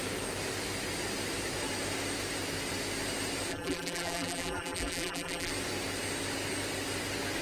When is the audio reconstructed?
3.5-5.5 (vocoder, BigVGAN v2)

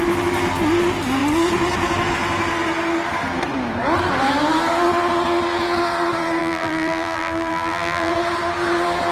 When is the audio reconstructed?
6.4-8.1 (vocoder, BigVGAN v2)